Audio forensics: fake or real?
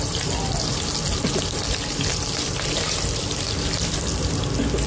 real